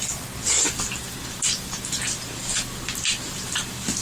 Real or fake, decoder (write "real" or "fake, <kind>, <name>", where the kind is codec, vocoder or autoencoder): fake, vocoder, BigVGAN v2